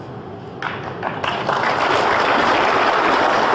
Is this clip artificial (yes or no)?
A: no